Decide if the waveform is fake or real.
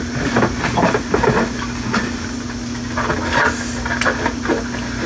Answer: real